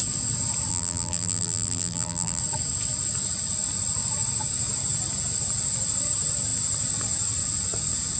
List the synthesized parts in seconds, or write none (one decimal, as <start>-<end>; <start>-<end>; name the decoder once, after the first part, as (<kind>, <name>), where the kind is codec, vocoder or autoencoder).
0.7-2.4 (vocoder, BigVGAN v2)